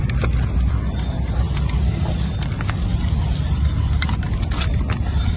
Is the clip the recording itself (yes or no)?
yes